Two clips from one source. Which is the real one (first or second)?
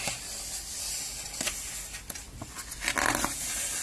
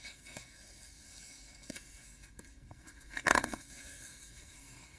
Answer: first